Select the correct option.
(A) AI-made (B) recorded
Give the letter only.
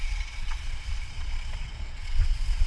A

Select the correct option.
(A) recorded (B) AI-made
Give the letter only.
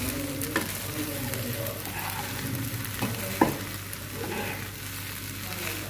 A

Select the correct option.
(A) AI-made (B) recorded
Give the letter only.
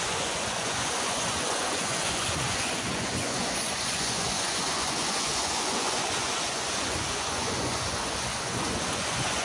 A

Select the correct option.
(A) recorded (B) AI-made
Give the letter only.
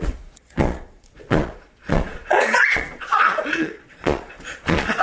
B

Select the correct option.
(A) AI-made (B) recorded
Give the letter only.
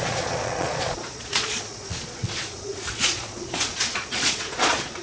A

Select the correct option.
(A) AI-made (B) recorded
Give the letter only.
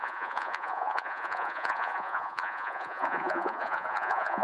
A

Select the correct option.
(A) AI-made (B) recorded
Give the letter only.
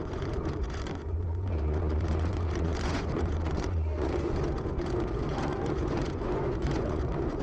A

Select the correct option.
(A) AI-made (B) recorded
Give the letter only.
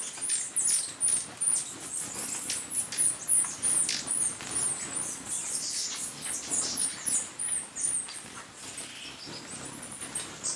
B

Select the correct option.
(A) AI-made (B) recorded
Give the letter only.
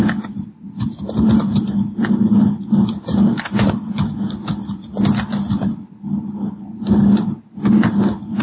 B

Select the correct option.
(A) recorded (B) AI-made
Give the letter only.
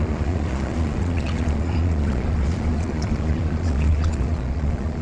B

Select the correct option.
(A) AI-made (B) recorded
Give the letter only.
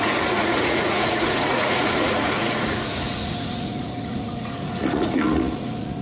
A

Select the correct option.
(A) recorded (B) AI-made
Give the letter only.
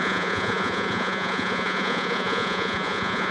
B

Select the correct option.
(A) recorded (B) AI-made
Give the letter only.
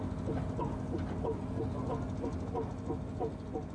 A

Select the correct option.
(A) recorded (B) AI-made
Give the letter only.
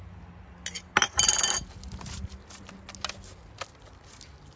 A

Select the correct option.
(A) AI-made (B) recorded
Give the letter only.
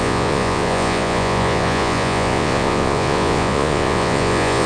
A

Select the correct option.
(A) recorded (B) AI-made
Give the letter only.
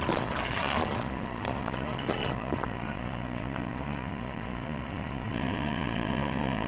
B